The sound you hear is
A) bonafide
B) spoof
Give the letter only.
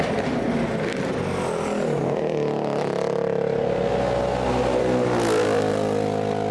A